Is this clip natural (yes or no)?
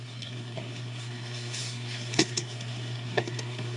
no